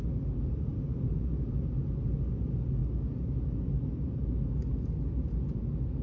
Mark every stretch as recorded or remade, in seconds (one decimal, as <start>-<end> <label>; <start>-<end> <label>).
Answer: 0.0-6.0 recorded